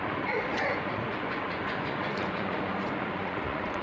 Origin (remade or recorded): remade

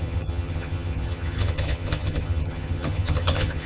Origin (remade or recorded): remade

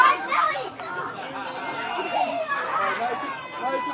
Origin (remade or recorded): recorded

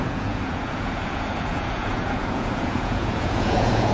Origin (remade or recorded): remade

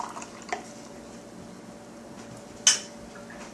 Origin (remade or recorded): recorded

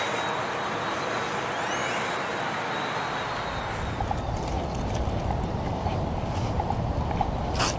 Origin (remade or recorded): recorded